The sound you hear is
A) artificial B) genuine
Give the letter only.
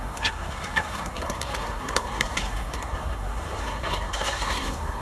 A